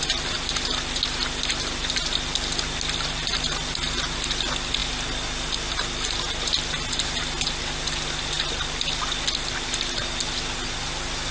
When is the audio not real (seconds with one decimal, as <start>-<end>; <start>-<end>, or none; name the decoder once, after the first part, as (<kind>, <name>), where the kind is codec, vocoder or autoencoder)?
none